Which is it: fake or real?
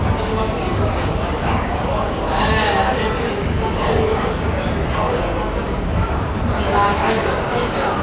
fake